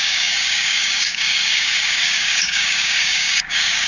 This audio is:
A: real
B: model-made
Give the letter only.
B